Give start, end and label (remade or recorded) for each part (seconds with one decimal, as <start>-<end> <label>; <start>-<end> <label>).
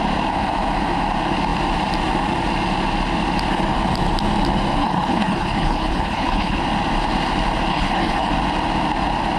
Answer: 0.0-4.8 recorded; 4.8-6.6 remade; 6.6-7.7 recorded; 7.7-8.3 remade; 8.3-9.4 recorded